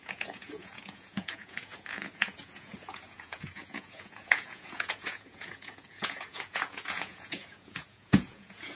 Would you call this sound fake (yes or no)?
yes